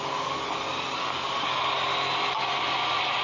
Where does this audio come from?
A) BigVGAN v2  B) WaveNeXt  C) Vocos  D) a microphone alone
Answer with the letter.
D